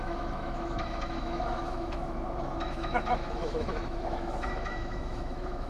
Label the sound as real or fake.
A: fake